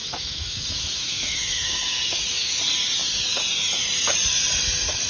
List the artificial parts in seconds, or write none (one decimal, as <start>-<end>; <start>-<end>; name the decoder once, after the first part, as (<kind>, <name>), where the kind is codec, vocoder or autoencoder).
0.0-2.6 (autoencoder, DAC-VAE)